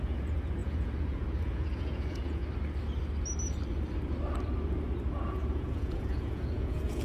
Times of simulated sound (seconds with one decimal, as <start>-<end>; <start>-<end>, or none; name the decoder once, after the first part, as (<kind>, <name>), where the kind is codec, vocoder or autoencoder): 0.0-2.4 (vocoder, Vocos); 5.1-7.0